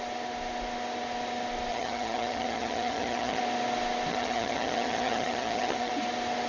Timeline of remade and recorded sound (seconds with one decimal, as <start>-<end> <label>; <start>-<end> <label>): 0.0-1.7 recorded; 1.7-3.4 remade; 3.4-4.1 recorded; 4.1-5.9 remade; 5.9-6.5 recorded